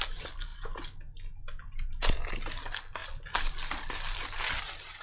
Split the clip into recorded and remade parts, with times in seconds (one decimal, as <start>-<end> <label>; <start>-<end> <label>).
0.0-5.0 recorded